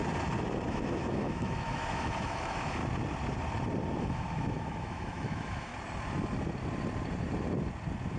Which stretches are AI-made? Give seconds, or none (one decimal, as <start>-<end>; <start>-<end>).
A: 0.7-2.8; 4.0-5.7